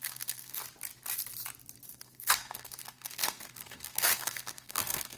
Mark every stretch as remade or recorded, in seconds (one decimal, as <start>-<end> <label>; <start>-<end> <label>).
0.0-0.6 remade; 0.6-1.9 recorded; 1.9-5.2 remade